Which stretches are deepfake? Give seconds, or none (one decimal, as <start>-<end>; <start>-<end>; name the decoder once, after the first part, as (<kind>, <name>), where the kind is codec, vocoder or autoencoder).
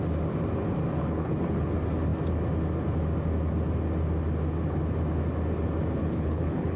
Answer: 1.0-1.7 (codec, HILCodec); 6.0-6.8